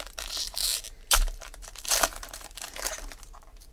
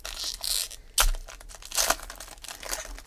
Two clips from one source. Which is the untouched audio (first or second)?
second